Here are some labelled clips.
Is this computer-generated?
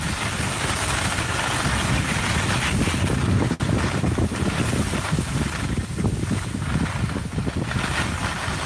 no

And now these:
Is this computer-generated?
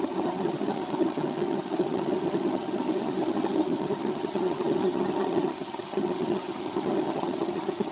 yes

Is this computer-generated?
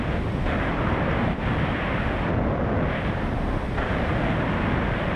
no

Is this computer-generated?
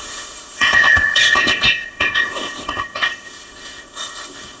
yes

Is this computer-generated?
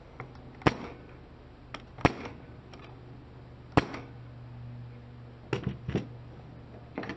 no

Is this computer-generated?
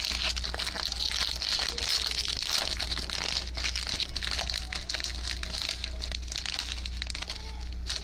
no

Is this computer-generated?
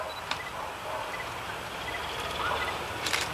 no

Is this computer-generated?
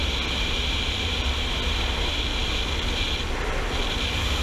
no